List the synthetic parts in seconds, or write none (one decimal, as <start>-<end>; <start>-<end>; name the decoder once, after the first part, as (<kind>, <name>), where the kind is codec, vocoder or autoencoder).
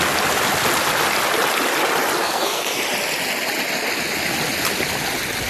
2.2-2.8 (codec, SNAC)